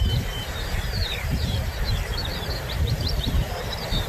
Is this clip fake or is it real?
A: fake